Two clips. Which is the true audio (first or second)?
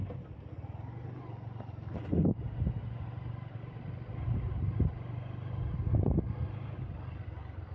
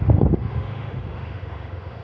first